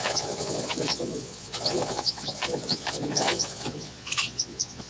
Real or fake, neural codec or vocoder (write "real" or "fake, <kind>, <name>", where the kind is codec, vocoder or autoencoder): fake, vocoder, Vocos